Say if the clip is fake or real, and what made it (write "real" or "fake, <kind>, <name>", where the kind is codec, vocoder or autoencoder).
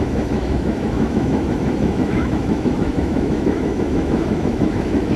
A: fake, autoencoder, DAC-VAE